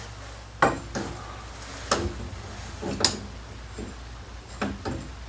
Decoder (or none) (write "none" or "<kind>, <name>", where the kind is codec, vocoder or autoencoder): none